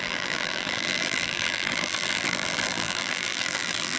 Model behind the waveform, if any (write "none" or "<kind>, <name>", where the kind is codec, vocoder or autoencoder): vocoder, BigVGAN v2